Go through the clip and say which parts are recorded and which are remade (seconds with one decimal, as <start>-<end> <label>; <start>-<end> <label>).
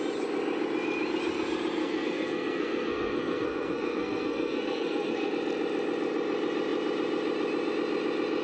0.0-1.8 recorded; 1.8-5.3 remade; 5.3-8.4 recorded